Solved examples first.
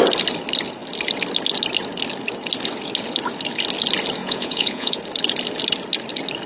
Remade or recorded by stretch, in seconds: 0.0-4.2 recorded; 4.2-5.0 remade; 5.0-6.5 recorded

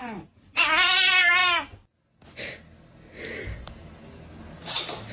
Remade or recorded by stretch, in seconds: 0.0-5.1 recorded

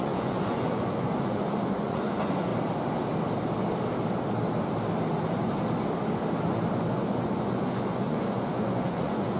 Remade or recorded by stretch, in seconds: 0.0-2.5 remade; 2.5-6.9 recorded; 6.9-9.4 remade

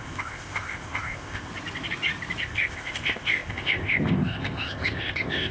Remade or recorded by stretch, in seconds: 0.0-1.5 remade; 1.5-2.4 recorded; 2.4-5.5 remade

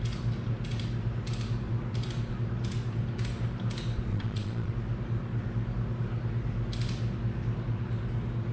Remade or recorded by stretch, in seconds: 0.0-4.1 recorded; 4.1-4.7 remade; 4.7-8.5 recorded